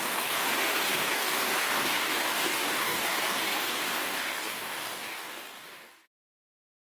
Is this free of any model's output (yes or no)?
no